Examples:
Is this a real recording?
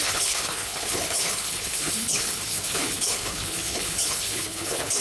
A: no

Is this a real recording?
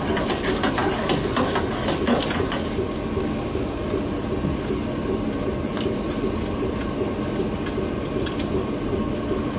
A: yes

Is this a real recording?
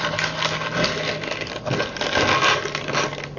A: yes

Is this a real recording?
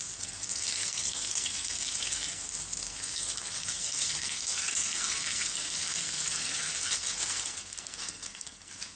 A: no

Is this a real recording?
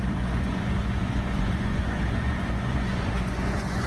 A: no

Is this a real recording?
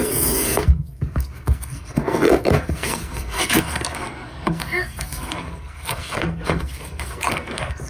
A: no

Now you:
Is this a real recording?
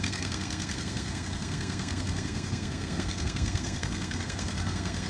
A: no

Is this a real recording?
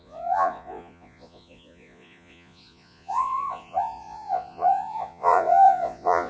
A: no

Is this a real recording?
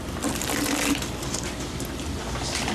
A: yes